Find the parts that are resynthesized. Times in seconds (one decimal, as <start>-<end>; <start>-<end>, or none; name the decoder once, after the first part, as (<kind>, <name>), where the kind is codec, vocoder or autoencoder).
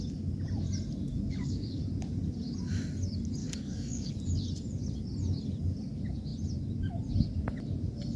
1.1-1.8 (codec, DAC); 3.4-4.1